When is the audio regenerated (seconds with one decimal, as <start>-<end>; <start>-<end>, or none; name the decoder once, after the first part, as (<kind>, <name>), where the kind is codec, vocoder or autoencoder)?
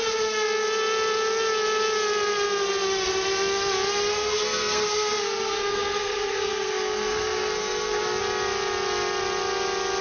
4.1-8.0 (codec, SNAC)